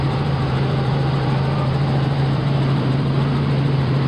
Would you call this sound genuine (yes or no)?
no